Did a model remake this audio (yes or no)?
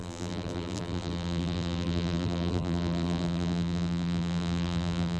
yes